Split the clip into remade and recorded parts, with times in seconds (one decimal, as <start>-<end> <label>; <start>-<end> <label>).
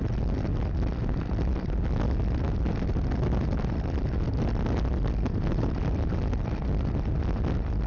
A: 0.0-3.4 recorded; 3.4-6.1 remade; 6.1-7.9 recorded